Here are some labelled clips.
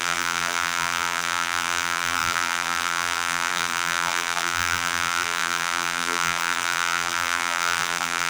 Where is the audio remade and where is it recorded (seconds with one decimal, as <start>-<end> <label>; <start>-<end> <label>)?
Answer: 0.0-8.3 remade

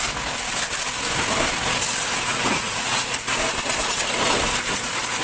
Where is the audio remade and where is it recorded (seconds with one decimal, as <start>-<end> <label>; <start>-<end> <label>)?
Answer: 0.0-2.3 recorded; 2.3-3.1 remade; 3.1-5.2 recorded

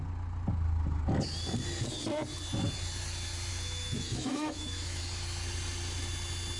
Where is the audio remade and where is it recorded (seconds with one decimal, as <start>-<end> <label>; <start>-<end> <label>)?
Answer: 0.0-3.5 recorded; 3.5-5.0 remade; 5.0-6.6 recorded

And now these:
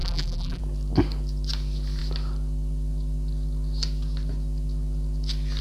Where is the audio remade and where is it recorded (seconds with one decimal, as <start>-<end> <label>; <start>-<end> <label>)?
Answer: 0.0-0.6 remade; 0.6-5.6 recorded

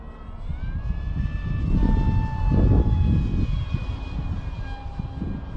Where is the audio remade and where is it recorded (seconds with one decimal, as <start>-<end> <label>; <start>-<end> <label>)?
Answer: 0.0-5.6 recorded

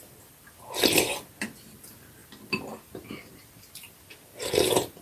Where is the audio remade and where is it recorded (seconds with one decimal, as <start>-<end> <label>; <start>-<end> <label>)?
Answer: 0.0-5.0 recorded

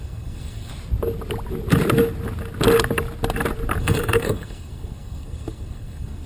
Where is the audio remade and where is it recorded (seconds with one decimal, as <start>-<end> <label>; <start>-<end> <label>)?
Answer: 0.0-0.7 remade; 0.7-3.8 recorded; 3.8-6.3 remade

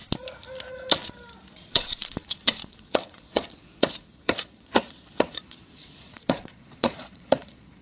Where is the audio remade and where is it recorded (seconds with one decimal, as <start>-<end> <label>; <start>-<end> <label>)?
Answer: 0.0-1.5 recorded; 1.5-7.8 remade